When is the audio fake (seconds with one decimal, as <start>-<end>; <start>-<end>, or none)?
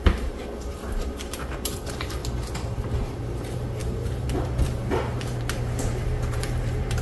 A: 0.0-0.4; 1.0-2.2; 2.7-7.0